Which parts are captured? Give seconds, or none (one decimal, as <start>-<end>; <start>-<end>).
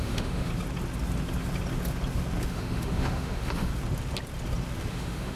0.5-2.5; 3.7-4.9